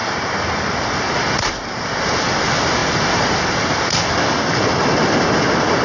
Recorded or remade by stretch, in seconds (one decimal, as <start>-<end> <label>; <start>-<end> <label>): 0.0-5.8 recorded